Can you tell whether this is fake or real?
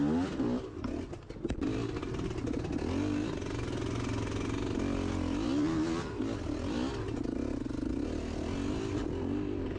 real